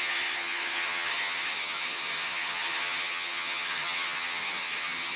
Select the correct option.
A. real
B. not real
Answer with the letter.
B